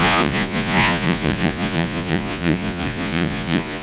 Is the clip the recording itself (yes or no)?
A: no